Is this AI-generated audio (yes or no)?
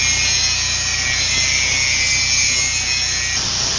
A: no